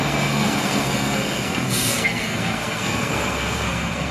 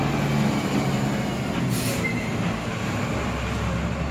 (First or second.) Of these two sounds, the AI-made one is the first